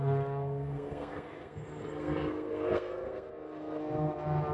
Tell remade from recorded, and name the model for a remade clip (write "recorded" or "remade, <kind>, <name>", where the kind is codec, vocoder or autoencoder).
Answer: remade, codec, SNAC